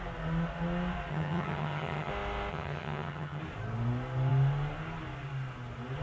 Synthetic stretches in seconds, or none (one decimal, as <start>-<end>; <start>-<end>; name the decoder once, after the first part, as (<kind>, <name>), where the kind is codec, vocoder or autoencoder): 1.1-2.1 (vocoder, HiFi-GAN); 2.5-3.4